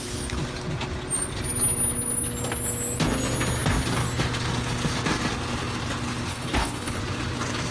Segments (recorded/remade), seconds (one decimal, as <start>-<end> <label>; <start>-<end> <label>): 0.0-6.3 recorded; 6.3-7.0 remade; 7.0-7.7 recorded